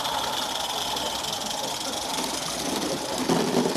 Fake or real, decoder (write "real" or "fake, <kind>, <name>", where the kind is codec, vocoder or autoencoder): fake, vocoder, BigVGAN v2